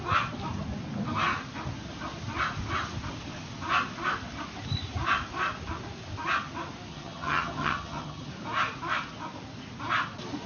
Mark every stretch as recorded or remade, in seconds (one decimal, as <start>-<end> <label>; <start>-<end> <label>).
0.0-6.9 recorded; 6.9-8.3 remade; 8.3-10.5 recorded